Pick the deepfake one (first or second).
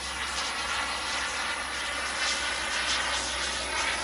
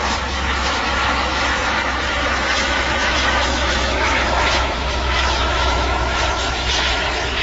second